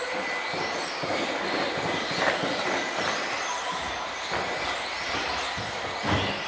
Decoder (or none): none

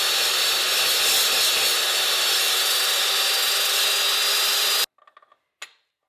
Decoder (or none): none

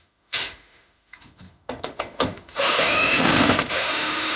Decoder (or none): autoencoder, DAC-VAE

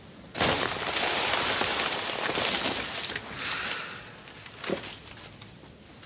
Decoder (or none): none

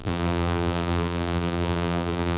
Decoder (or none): vocoder, BigVGAN v2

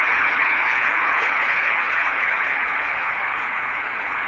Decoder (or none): codec, HILCodec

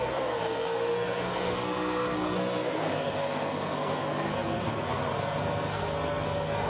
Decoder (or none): codec, SNAC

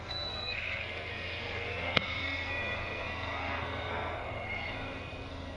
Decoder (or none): codec, SNAC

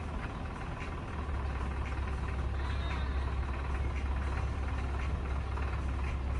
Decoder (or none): none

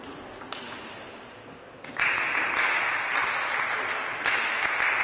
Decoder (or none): none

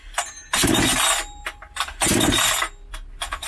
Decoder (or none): none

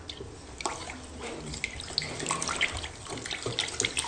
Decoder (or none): none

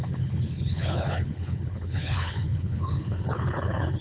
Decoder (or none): codec, HILCodec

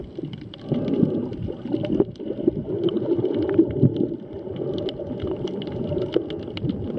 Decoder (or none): none